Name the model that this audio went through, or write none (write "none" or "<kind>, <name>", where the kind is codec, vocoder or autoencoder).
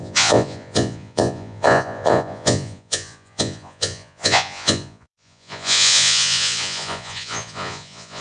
vocoder, Vocos